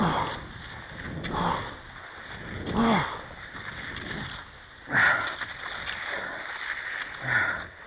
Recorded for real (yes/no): yes